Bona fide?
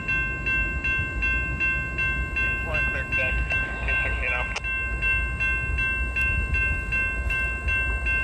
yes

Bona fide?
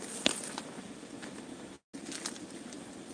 yes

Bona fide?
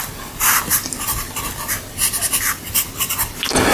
yes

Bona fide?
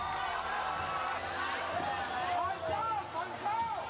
yes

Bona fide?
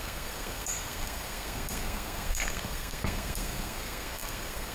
no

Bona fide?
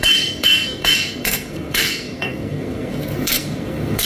no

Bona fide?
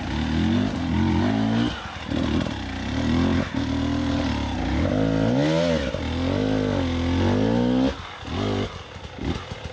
yes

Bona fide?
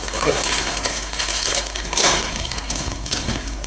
no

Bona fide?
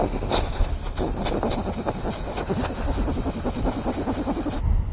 yes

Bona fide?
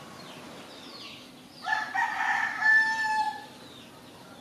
yes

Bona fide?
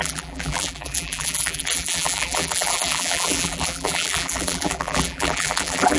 no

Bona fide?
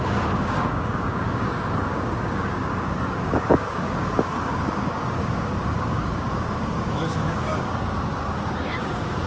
no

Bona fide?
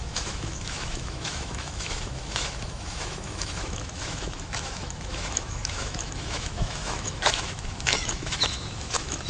no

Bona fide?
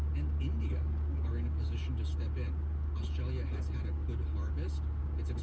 yes